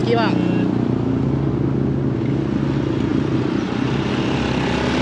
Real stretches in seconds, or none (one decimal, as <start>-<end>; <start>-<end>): 0.0-3.1; 4.2-5.0